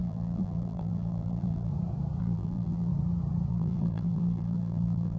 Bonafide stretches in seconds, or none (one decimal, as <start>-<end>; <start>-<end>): 1.7-2.2; 2.9-3.5